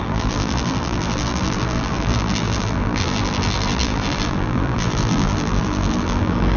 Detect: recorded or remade remade